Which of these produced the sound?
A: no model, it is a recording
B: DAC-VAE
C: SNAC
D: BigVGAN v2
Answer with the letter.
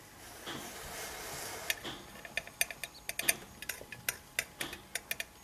A